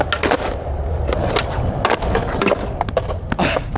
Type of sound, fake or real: real